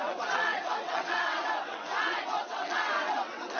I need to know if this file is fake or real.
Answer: fake